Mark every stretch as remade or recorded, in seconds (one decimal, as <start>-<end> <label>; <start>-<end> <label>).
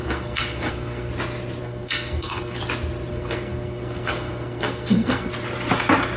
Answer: 0.0-1.1 remade; 1.1-1.6 recorded; 1.6-2.6 remade; 2.6-3.1 recorded; 3.1-5.3 remade; 5.3-6.2 recorded